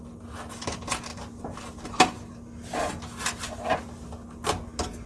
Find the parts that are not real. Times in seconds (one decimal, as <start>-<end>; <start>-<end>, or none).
none